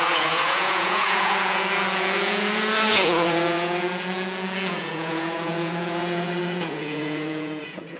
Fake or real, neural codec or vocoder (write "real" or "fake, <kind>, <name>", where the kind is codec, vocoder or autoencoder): fake, vocoder, Vocos